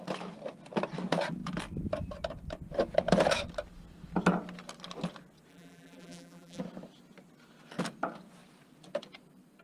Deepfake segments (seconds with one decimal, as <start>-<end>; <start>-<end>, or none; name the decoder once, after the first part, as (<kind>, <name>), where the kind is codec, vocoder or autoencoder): 5.5-6.6 (vocoder, BigVGAN v2)